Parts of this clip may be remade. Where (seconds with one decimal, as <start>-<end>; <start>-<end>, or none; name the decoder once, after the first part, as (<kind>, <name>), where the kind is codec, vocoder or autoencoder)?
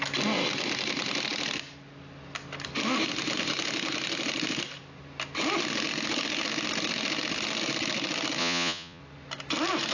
8.4-9.0 (vocoder, Vocos)